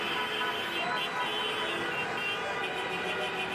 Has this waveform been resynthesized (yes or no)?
no